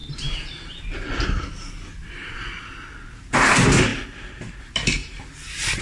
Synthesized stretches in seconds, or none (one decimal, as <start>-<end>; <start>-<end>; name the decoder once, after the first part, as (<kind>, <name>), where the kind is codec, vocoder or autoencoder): none